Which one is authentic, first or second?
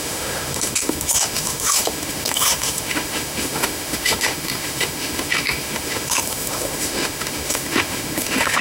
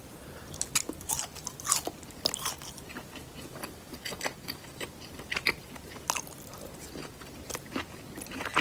second